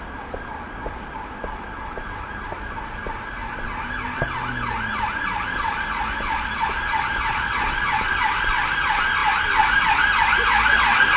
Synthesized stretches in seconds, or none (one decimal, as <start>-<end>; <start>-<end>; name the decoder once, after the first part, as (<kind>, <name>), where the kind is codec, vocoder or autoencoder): none